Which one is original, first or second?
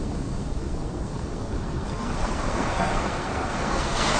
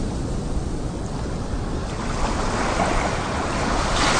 second